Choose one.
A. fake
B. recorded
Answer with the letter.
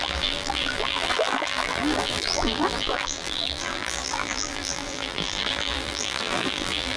A